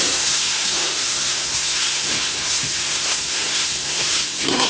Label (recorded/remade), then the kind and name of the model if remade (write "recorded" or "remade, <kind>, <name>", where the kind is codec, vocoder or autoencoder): remade, codec, SNAC